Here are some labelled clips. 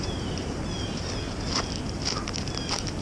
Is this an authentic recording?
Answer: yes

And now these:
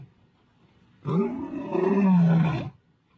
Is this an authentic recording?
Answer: yes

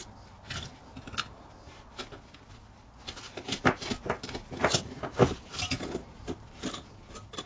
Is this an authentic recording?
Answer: yes